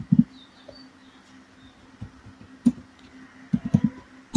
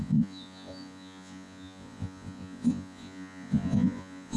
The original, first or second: first